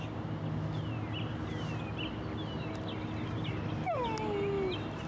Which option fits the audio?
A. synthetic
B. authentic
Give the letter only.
B